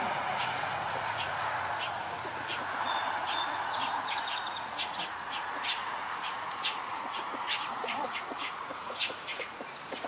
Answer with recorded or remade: remade